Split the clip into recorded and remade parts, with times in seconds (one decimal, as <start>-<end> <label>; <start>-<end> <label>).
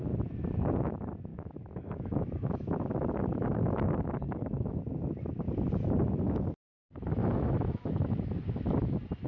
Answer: 0.0-1.3 recorded; 1.3-4.8 remade; 4.8-7.2 recorded; 7.2-7.8 remade; 7.8-9.3 recorded